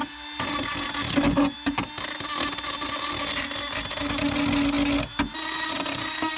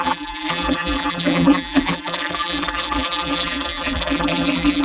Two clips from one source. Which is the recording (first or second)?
first